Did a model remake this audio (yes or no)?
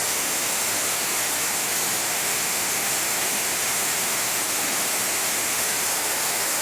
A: yes